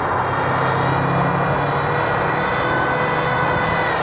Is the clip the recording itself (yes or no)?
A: yes